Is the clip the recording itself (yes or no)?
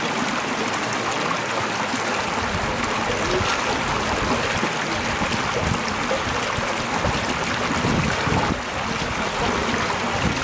yes